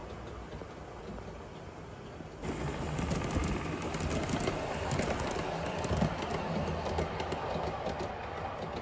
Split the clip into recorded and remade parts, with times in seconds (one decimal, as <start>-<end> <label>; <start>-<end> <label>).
0.0-8.8 recorded